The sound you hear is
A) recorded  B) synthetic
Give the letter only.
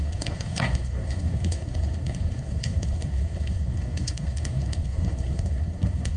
B